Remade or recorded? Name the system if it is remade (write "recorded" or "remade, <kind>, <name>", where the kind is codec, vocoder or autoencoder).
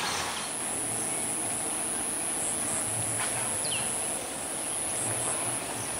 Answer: recorded